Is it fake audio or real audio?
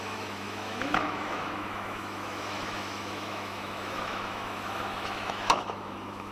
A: fake